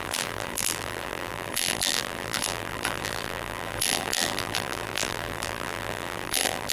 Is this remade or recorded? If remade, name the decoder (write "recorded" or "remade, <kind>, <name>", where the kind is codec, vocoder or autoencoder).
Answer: remade, vocoder, BigVGAN v2